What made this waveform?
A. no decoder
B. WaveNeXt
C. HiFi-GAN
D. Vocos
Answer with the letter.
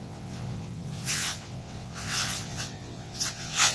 B